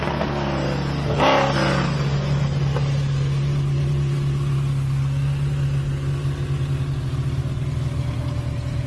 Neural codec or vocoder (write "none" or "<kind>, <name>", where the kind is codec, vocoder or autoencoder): none